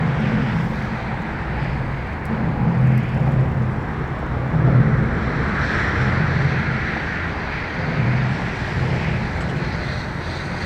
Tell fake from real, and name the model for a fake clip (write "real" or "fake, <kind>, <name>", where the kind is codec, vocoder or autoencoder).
real